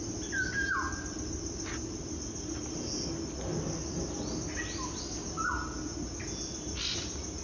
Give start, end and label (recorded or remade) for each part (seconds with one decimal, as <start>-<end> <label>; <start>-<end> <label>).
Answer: 0.0-7.4 recorded